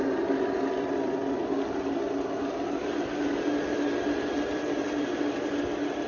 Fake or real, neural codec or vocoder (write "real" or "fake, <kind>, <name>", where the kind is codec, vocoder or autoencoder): real